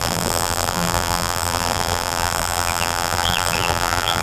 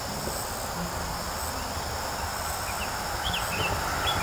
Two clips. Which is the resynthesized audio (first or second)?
first